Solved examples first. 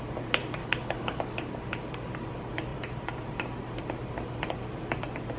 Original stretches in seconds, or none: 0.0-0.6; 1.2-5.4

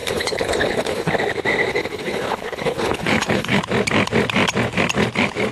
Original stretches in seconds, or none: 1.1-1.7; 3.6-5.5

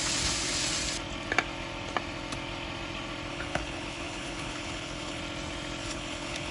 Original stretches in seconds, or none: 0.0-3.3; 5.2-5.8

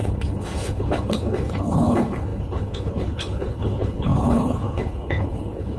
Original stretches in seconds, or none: none